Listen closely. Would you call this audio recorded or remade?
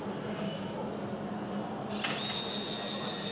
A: recorded